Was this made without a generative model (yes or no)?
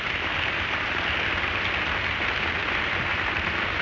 yes